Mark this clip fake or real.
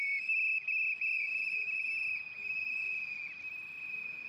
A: real